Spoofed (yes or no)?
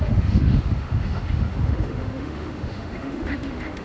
yes